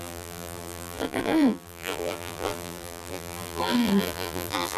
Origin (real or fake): fake